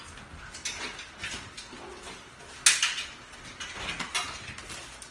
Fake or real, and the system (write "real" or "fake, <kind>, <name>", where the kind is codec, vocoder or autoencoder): real